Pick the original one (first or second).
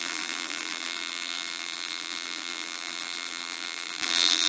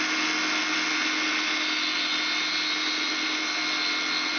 second